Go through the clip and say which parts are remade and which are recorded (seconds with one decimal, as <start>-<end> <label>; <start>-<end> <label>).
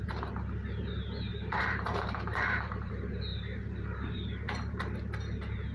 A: 0.0-1.3 recorded; 1.3-2.9 remade; 2.9-3.3 recorded; 3.3-5.3 remade; 5.3-5.7 recorded